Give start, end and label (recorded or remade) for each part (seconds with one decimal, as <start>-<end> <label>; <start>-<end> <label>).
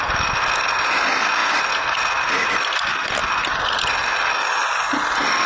0.0-5.5 recorded